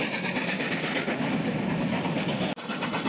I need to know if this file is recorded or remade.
recorded